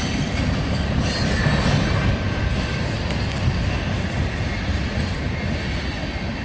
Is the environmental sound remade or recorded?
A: recorded